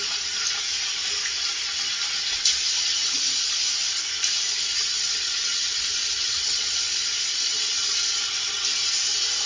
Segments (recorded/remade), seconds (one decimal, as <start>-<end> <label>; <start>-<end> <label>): 0.0-4.9 recorded; 4.9-8.5 remade; 8.5-9.5 recorded

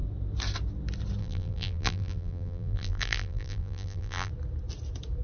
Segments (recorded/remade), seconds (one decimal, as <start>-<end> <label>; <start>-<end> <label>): 0.0-1.2 recorded; 1.2-4.3 remade; 4.3-5.2 recorded

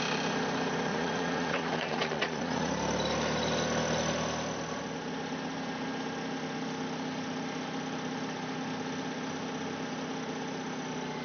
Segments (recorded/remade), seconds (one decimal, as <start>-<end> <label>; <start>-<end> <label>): 0.0-0.9 recorded; 0.9-2.7 remade; 2.7-11.2 recorded